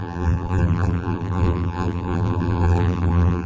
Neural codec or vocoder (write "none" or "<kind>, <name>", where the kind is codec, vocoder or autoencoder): vocoder, BigVGAN v2